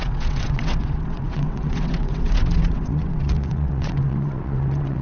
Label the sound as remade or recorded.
remade